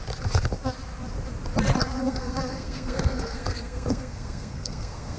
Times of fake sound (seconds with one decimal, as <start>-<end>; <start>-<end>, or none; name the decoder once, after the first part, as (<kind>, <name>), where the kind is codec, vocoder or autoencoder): 2.0-5.2 (codec, SNAC)